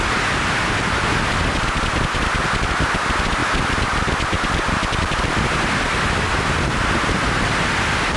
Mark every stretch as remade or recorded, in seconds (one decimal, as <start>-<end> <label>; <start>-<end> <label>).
0.0-8.2 recorded

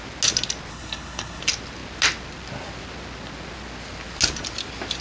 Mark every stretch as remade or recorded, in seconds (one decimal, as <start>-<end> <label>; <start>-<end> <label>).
0.0-0.7 recorded; 0.7-1.4 remade; 1.4-5.0 recorded

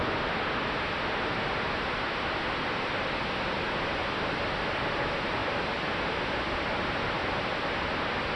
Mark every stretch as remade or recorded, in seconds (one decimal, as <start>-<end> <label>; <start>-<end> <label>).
0.0-8.4 recorded

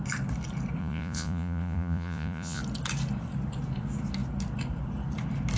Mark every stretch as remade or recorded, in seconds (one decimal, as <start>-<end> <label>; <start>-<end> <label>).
0.0-0.8 recorded; 0.8-2.6 remade; 2.6-5.6 recorded

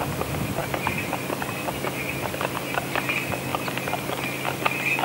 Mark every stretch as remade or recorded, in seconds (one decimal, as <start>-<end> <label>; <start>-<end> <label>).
0.0-5.0 recorded